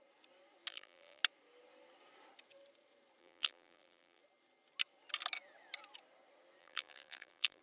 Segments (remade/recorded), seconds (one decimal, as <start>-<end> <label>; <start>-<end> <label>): 0.0-0.7 recorded; 0.7-1.2 remade; 1.2-3.2 recorded; 3.2-4.2 remade; 4.2-6.6 recorded; 6.6-7.6 remade